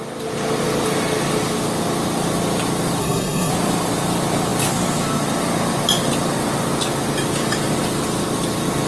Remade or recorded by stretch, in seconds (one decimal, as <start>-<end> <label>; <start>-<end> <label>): 0.0-3.0 recorded; 3.0-3.5 remade; 3.5-8.9 recorded